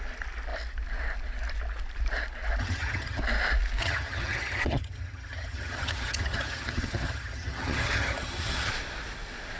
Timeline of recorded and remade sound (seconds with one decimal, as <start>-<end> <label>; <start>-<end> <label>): 0.0-2.6 recorded; 2.6-3.2 remade; 3.2-3.8 recorded; 3.8-8.7 remade; 8.7-9.6 recorded